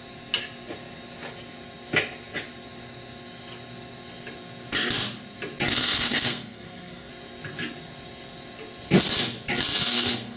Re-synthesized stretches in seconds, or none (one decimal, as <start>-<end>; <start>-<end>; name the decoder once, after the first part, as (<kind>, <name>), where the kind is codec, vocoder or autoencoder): 5.7-7.1 (codec, SNAC); 9.8-10.4